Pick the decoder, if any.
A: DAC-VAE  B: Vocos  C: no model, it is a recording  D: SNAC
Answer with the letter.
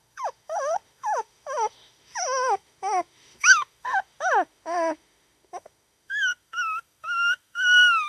A